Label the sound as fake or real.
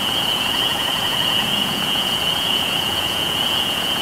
fake